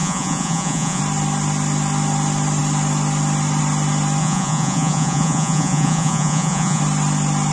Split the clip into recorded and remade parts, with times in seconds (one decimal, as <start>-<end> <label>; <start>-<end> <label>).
0.0-1.0 remade; 1.0-4.2 recorded; 4.2-6.8 remade; 6.8-7.5 recorded